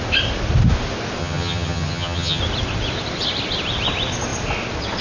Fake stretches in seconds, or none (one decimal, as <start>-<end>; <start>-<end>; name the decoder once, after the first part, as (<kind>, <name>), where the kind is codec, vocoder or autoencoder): 1.2-2.4 (vocoder, HiFi-GAN)